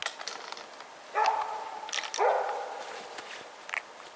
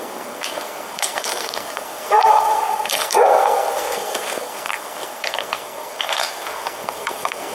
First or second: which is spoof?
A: second